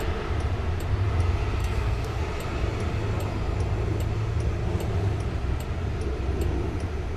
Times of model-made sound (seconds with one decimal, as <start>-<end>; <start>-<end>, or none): 1.6-2.2